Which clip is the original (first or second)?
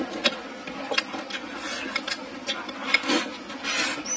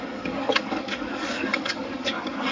first